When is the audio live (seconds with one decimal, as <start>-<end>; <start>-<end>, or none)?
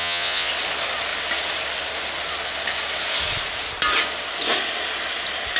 0.5-5.6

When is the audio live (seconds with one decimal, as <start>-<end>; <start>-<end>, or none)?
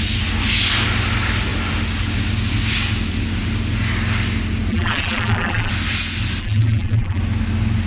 0.0-4.7; 5.7-6.4; 7.2-7.9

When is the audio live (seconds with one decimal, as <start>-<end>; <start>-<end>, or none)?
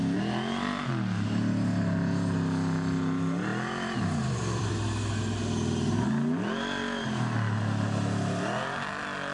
0.0-3.5; 4.7-9.3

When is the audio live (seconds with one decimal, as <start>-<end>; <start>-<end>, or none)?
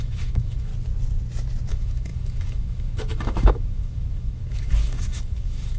0.7-1.7